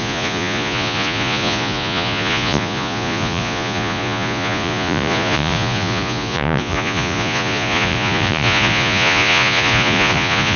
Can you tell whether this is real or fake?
fake